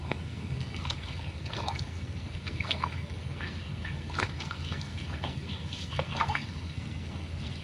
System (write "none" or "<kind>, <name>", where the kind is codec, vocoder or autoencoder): codec, SNAC